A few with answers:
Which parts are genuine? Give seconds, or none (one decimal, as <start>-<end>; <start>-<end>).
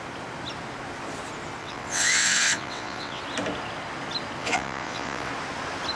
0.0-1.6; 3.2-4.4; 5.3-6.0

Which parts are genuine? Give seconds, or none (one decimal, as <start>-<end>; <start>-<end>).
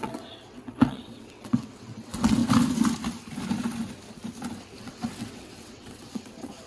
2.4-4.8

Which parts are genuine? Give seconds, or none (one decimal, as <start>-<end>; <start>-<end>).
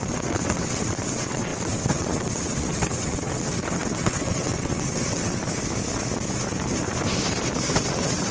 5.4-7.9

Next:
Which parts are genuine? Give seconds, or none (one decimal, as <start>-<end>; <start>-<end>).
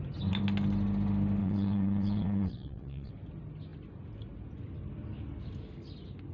0.0-1.4; 3.1-6.3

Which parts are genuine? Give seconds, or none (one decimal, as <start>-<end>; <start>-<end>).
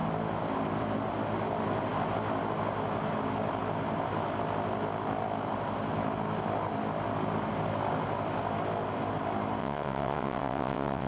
0.0-9.6